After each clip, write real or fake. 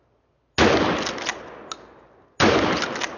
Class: real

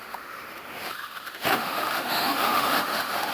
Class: fake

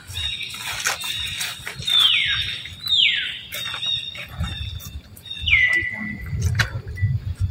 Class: real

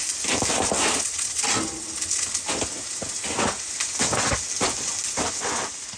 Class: real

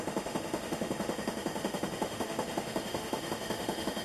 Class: fake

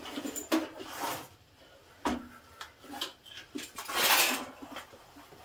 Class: real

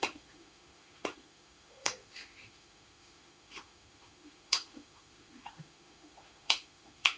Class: fake